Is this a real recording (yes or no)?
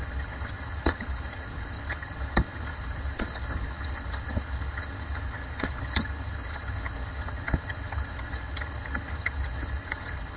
no